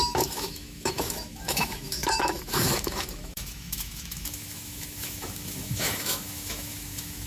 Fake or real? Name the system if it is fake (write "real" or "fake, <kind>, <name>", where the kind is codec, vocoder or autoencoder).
fake, autoencoder, DAC-VAE